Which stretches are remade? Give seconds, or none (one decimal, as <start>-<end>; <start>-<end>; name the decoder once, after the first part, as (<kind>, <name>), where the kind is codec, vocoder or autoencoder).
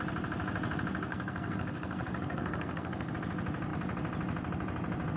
1.1-3.1 (codec, SNAC)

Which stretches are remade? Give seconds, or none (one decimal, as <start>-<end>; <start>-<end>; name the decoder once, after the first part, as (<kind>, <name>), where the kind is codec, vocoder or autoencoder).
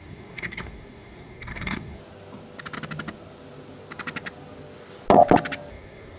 0.0-2.0 (codec, SNAC); 5.7-6.2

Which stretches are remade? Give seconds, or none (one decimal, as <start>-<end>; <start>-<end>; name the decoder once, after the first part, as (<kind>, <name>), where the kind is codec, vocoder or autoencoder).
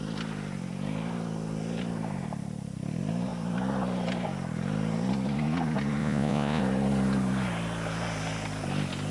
6.0-6.6 (vocoder, Vocos)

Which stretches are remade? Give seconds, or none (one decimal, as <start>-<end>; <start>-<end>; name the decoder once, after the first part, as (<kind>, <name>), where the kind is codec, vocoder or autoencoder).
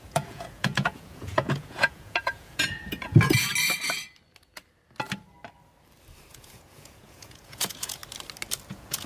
0.0-3.5 (vocoder, Vocos); 6.3-8.0; 8.7-9.1